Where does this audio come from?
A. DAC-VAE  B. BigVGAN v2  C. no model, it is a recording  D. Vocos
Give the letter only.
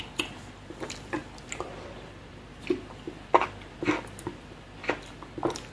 C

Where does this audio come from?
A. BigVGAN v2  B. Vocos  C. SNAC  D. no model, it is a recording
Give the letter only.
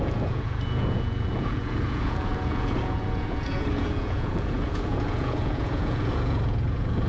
B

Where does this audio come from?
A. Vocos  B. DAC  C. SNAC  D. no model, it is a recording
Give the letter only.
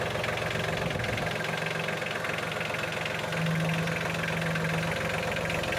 D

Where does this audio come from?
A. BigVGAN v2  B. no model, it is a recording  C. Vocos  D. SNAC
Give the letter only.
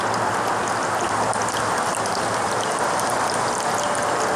B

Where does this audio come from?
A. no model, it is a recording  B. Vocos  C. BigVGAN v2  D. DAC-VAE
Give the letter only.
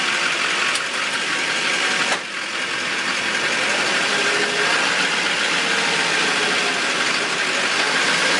A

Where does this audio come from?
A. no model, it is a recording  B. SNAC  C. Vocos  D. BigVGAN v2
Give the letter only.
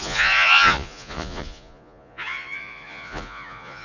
C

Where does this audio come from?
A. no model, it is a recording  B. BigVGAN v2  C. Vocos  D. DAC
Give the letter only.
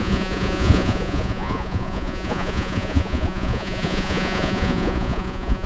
C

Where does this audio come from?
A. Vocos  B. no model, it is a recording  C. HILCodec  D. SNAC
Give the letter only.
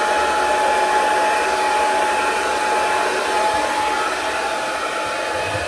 B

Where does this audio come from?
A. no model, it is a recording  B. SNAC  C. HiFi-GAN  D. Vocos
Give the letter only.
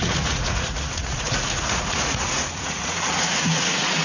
D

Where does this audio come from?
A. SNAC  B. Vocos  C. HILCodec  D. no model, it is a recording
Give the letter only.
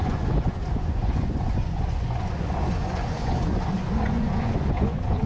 B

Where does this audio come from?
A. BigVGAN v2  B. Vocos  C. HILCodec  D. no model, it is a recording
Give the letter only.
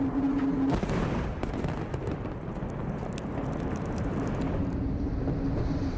D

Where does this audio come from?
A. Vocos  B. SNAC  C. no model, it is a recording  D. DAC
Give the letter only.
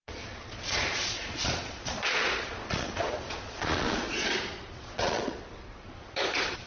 A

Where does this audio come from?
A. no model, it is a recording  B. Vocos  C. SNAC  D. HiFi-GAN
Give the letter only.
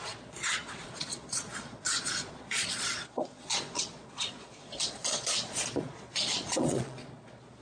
B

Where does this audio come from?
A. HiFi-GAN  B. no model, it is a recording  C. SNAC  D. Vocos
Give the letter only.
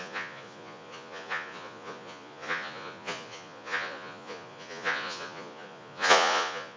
D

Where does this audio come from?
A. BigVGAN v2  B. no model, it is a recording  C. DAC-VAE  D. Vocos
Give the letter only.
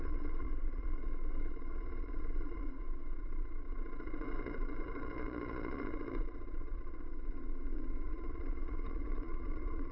D